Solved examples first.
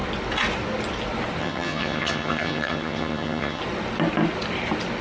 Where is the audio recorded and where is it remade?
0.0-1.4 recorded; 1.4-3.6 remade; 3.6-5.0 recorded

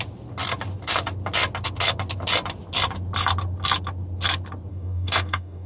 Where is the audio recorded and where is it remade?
0.0-4.7 recorded; 4.7-5.7 remade

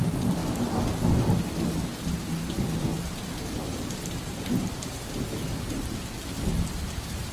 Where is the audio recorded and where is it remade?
0.0-0.4 remade; 0.4-1.1 recorded; 1.1-7.3 remade

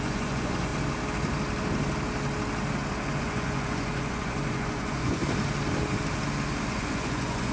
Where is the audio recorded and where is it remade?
0.0-0.7 remade; 0.7-3.2 recorded; 3.2-5.2 remade; 5.2-6.7 recorded; 6.7-7.5 remade

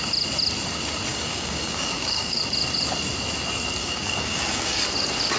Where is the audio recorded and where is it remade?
0.0-1.1 recorded; 1.1-2.4 remade; 2.4-3.8 recorded; 3.8-4.8 remade; 4.8-5.4 recorded